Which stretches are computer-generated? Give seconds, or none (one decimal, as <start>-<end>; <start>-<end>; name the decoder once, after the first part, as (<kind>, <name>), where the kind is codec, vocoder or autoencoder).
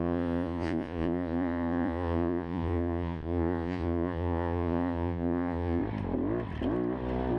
0.0-5.8 (vocoder, Vocos)